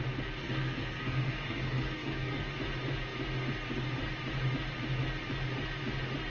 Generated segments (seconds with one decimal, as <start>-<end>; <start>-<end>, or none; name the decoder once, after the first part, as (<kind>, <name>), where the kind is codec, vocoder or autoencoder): 0.4-2.5 (codec, SNAC)